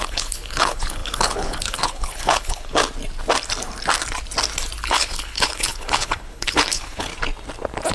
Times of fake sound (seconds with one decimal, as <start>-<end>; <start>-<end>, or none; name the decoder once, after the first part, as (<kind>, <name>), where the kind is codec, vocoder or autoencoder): 0.0-2.8 (codec, HILCodec); 4.8-7.1